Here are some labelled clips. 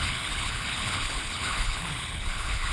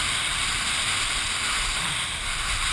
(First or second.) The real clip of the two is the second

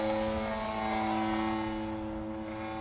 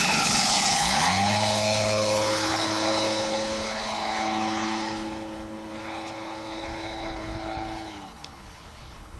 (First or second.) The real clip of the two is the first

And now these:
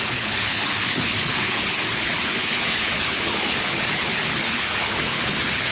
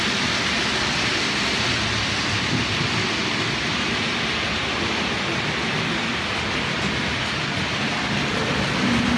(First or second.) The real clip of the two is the second